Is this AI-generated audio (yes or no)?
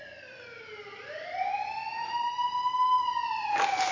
no